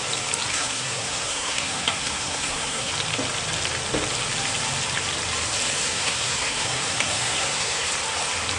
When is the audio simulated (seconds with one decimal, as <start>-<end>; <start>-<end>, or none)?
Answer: 0.5-2.9; 5.8-7.9